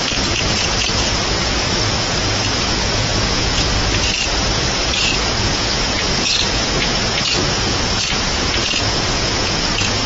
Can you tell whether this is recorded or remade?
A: remade